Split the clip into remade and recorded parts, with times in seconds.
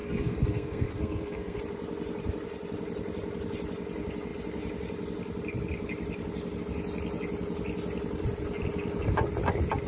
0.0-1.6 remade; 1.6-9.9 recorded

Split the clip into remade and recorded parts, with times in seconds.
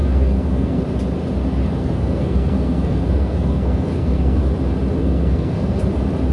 0.0-0.8 remade; 0.8-1.8 recorded; 1.8-4.4 remade; 4.4-5.0 recorded; 5.0-5.8 remade; 5.8-6.3 recorded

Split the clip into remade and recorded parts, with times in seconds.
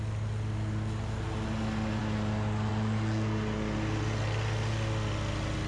0.0-5.7 recorded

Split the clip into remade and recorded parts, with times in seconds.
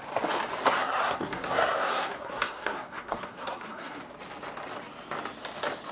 0.0-0.8 recorded; 0.8-4.0 remade; 4.0-5.9 recorded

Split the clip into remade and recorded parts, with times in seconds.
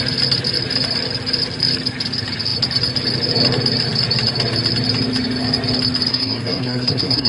0.0-6.1 recorded; 6.1-7.3 remade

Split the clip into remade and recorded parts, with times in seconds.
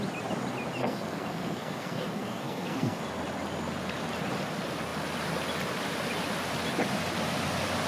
0.0-0.8 recorded; 0.8-3.0 remade; 3.0-7.9 recorded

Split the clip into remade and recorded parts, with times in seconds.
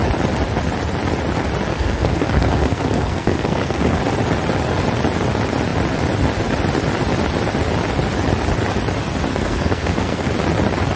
0.0-1.7 recorded; 1.7-4.0 remade; 4.0-9.3 recorded; 9.3-10.3 remade; 10.3-11.0 recorded